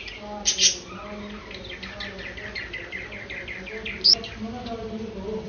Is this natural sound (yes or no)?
yes